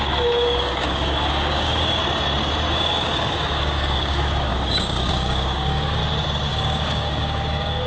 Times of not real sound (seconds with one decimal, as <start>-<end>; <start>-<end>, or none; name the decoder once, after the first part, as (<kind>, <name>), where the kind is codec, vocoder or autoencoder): 0.0-2.0 (codec, DAC); 2.7-6.0; 6.5-7.9